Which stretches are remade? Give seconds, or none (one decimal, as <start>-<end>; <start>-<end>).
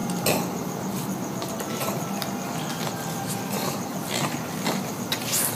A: none